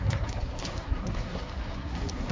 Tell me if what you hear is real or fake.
fake